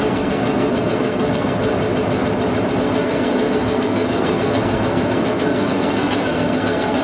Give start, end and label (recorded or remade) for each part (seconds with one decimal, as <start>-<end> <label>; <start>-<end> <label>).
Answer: 0.0-1.7 remade; 1.7-2.8 recorded; 2.8-7.0 remade